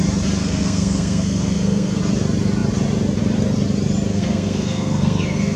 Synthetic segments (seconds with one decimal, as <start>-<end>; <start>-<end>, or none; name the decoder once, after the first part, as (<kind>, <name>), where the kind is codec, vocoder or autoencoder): 0.4-2.0 (codec, SNAC); 4.1-5.6